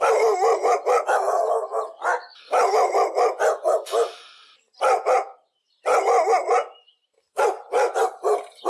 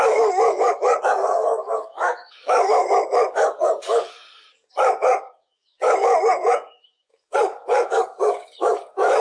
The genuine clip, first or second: first